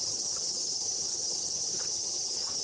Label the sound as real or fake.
fake